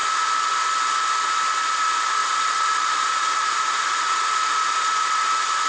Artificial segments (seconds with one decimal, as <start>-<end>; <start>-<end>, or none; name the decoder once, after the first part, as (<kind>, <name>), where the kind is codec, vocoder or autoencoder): 2.2-5.7 (vocoder, BigVGAN v2)